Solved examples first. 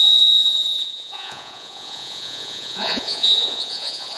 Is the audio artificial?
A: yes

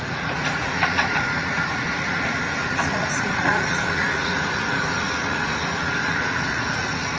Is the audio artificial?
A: yes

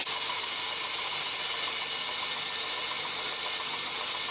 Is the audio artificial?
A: no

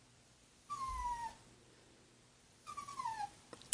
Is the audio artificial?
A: no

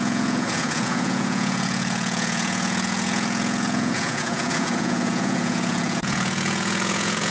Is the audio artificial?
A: yes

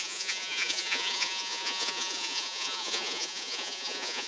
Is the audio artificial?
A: yes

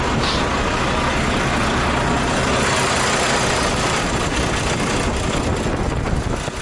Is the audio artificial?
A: no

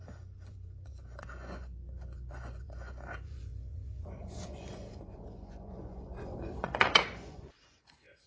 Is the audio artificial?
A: yes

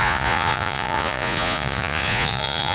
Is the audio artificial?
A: yes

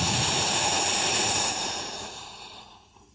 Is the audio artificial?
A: yes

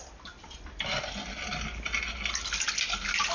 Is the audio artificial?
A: no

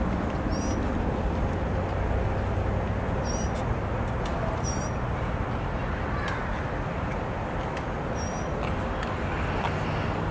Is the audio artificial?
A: no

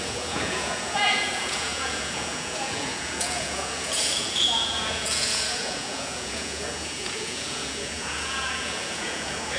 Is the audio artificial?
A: yes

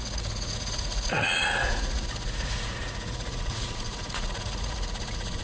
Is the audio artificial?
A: yes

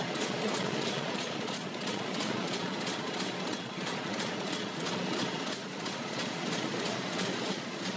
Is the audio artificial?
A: yes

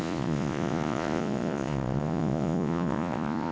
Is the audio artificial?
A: yes